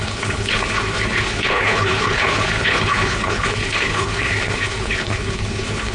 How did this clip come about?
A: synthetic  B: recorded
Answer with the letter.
A